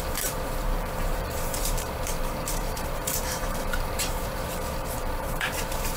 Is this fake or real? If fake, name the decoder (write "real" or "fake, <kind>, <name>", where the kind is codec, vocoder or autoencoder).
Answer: fake, vocoder, BigVGAN v2